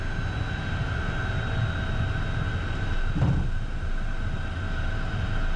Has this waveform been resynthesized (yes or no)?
no